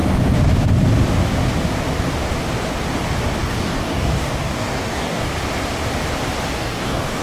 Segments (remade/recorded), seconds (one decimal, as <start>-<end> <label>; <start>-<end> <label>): 0.0-3.4 recorded; 3.4-5.3 remade; 5.3-6.5 recorded; 6.5-7.2 remade